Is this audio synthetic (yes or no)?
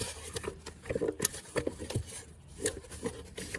no